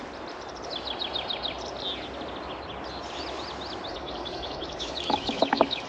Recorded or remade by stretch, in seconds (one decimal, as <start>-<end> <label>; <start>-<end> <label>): 0.0-3.9 recorded; 3.9-5.9 remade